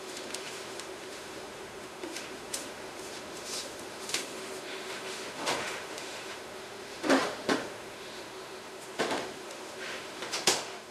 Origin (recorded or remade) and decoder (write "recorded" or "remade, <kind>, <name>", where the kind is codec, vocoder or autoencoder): remade, autoencoder, DAC-VAE